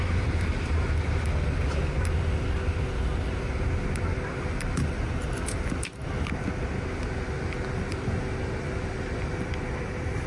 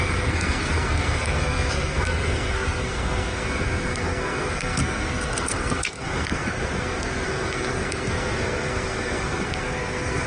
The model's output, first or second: second